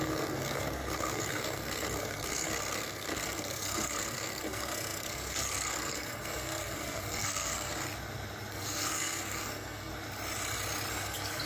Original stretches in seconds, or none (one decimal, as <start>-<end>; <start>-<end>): 7.7-8.5; 9.9-10.9